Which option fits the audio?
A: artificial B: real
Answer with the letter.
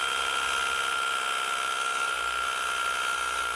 B